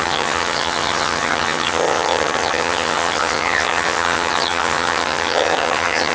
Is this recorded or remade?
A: remade